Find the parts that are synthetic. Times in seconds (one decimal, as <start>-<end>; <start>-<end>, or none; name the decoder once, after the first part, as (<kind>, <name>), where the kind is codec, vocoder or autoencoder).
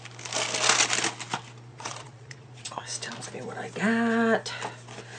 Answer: 1.7-2.8 (vocoder, Vocos)